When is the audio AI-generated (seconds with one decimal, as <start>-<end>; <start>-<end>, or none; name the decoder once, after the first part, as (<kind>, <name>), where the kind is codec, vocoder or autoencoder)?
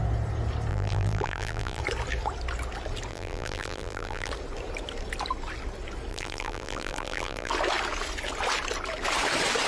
0.7-1.8 (vocoder, BigVGAN v2); 3.1-4.3; 6.1-7.5